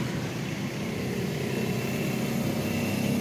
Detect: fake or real real